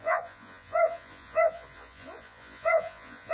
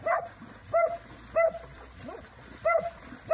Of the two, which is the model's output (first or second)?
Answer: first